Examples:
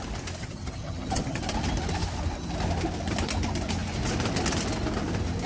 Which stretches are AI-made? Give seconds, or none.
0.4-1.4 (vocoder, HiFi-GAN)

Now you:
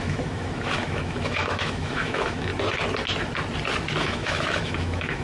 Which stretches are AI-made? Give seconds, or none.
0.0-2.5 (autoencoder, DAC-VAE); 4.0-5.2

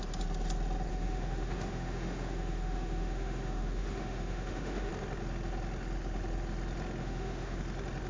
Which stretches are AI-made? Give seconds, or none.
0.9-4.9 (autoencoder, DAC-VAE); 7.0-7.6

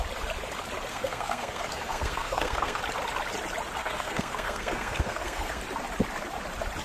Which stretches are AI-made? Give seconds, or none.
0.9-2.8 (codec, SNAC); 3.8-5.6

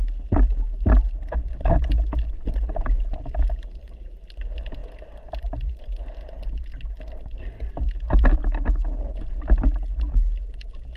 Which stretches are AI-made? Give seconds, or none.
none

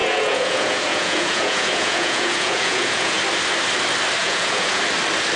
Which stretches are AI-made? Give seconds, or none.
0.0-3.2 (vocoder, Vocos); 4.2-4.8